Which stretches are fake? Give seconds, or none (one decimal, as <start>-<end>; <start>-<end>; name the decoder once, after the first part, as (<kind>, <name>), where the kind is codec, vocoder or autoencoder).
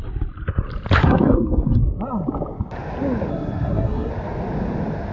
1.0-1.8 (codec, SNAC); 3.3-4.1